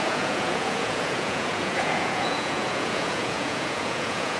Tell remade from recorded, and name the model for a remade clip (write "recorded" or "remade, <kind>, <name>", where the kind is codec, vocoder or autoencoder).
remade, vocoder, Vocos